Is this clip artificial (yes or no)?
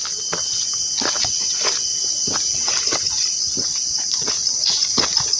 no